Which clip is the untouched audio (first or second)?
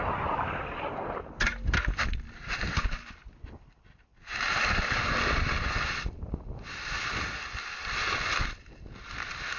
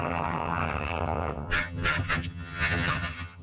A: first